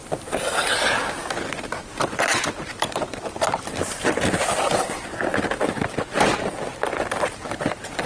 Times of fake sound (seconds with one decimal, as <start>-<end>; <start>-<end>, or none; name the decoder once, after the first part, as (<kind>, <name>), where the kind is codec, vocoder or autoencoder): 0.0-0.6 (vocoder, BigVGAN v2); 1.2-5.0; 6.7-8.1